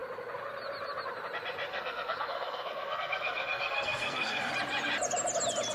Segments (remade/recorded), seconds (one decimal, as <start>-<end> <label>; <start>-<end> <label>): 0.0-1.7 recorded; 1.7-4.5 remade; 4.5-5.7 recorded